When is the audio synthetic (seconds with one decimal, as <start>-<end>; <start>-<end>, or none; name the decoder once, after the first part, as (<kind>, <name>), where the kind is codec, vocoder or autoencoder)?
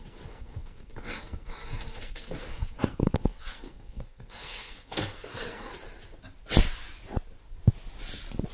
0.0-5.7 (codec, SNAC)